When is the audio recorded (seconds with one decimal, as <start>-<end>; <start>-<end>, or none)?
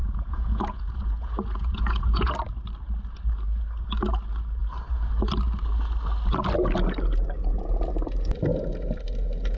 2.3-9.6